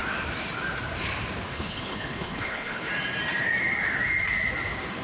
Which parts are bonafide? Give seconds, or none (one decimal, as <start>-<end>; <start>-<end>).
0.0-1.5; 2.9-5.0